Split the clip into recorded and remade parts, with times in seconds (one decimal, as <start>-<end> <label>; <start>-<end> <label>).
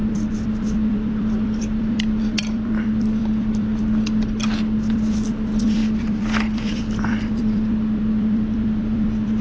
0.0-3.7 remade; 3.7-4.9 recorded; 4.9-9.4 remade